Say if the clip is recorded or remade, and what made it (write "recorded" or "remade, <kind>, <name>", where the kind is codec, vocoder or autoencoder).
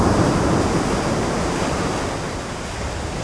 recorded